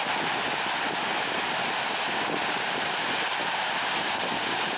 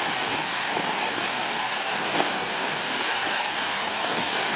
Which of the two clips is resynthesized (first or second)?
second